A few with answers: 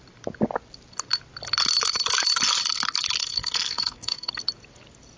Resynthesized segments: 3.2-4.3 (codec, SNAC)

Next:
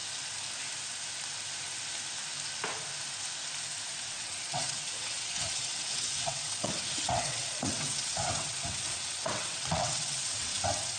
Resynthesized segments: 4.0-11.0 (vocoder, WaveNeXt)